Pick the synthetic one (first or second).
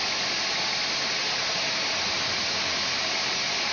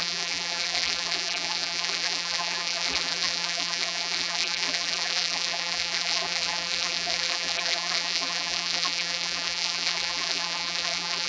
second